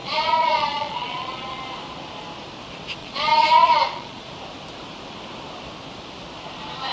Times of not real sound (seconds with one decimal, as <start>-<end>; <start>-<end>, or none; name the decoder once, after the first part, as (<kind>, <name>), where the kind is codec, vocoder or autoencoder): 0.0-1.6 (vocoder, Vocos); 3.0-4.3

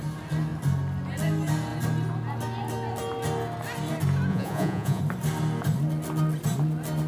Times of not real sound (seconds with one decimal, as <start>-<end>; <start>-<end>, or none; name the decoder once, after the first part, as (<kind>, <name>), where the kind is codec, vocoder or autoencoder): 4.3-5.0 (vocoder, Vocos)